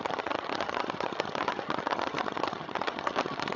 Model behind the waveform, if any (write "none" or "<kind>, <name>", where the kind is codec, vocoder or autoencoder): vocoder, HiFi-GAN